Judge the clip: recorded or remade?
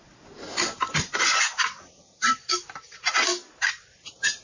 recorded